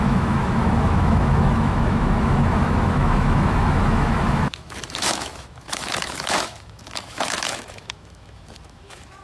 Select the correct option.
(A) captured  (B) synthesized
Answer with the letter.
B